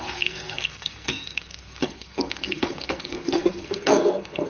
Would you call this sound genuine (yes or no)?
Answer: no